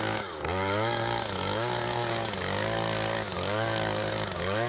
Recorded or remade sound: remade